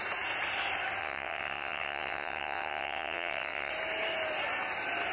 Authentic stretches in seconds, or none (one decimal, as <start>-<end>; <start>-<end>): 0.0-1.0; 3.7-5.1